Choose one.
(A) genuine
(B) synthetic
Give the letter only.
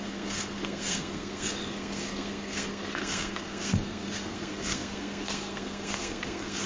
B